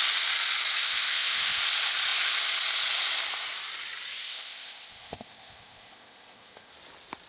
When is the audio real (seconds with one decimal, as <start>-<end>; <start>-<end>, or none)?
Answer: 0.0-0.8; 1.6-4.2; 6.7-7.3